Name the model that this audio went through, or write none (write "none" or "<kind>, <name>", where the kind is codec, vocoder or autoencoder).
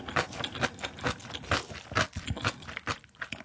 none